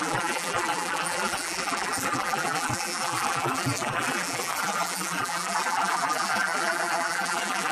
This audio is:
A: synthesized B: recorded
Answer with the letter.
A